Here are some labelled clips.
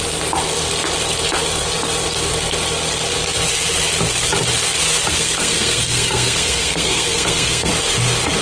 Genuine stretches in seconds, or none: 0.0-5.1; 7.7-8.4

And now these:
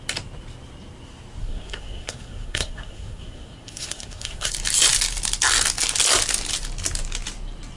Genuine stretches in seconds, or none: 0.0-1.4; 4.5-7.8

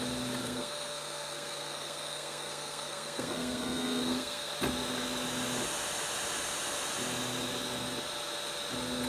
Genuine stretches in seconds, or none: 0.0-0.4; 4.5-9.1

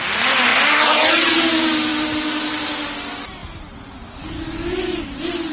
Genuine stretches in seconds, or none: 0.0-5.5

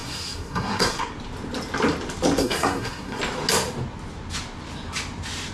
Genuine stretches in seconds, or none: 1.1-2.4; 3.2-5.5

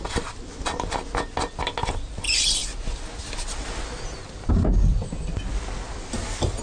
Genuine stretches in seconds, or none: 0.0-6.6

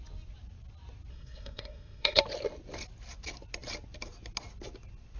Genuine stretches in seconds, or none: 0.0-1.1; 2.2-5.2